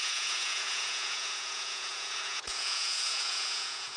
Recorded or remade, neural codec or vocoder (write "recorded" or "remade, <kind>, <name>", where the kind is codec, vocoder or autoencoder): remade, vocoder, Vocos